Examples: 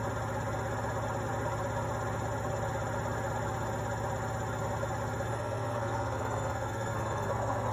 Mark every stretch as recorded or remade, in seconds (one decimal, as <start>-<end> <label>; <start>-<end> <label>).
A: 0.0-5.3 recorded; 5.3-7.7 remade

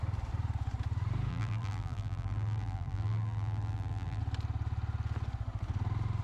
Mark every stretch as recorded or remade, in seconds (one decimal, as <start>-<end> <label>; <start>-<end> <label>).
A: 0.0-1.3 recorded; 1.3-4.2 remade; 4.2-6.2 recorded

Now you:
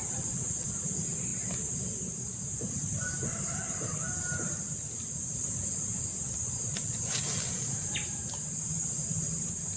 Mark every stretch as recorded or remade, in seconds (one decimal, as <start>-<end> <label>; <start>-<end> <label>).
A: 0.0-5.3 recorded; 5.3-6.9 remade; 6.9-9.8 recorded